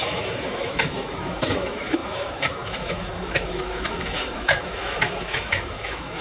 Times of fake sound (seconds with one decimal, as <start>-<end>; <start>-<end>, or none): 0.0-6.2